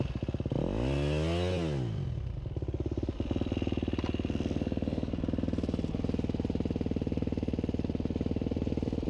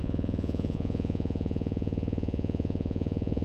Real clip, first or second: first